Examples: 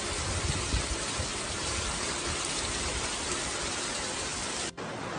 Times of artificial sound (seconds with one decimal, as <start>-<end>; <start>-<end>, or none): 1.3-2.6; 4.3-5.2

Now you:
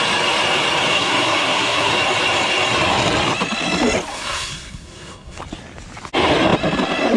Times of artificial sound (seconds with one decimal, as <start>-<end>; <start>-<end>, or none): 0.9-1.9; 4.1-5.4

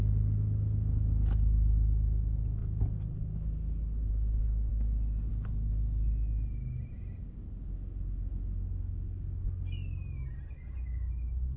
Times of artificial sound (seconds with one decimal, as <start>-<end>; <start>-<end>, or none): none

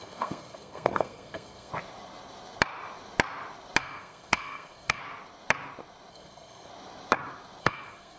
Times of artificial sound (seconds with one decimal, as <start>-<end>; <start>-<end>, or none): 0.0-1.7; 3.8-5.0; 6.1-6.7; 7.6-8.2